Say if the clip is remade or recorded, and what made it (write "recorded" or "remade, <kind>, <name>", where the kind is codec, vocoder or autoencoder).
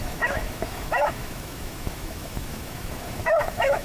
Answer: remade, autoencoder, DAC-VAE